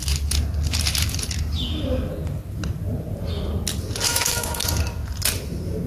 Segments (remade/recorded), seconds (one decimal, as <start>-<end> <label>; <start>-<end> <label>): 0.0-4.1 recorded; 4.1-4.6 remade; 4.6-5.9 recorded